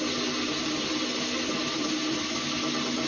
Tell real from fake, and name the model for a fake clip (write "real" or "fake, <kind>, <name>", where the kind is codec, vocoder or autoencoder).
real